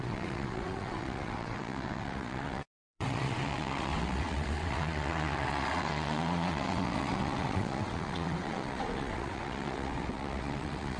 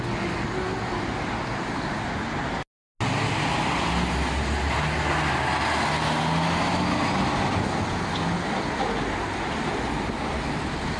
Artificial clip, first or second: first